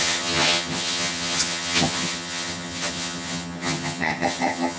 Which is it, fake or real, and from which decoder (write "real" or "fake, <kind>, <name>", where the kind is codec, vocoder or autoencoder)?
fake, vocoder, HiFi-GAN